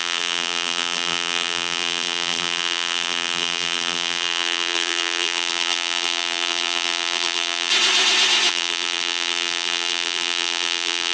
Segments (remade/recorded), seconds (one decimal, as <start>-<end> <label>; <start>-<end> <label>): 0.0-7.7 remade; 7.7-8.5 recorded; 8.5-11.1 remade